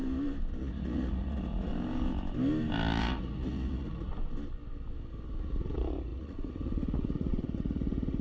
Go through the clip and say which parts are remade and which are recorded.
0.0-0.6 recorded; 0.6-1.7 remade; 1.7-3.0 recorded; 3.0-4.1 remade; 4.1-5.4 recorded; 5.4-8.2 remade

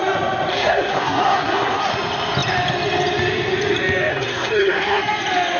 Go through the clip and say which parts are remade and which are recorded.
0.0-0.5 recorded; 0.5-1.9 remade; 1.9-4.1 recorded; 4.1-5.0 remade; 5.0-5.6 recorded

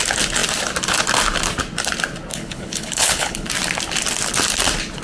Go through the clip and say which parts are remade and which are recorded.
0.0-2.3 recorded; 2.3-3.5 remade; 3.5-5.0 recorded

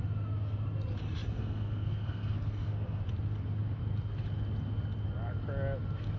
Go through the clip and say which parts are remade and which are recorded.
0.0-1.3 recorded; 1.3-3.0 remade; 3.0-6.2 recorded

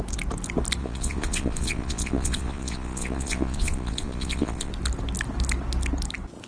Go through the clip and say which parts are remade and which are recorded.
0.0-0.8 recorded; 0.8-4.7 remade; 4.7-6.5 recorded